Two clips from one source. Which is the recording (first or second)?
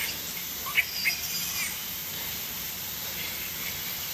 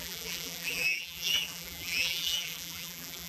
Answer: first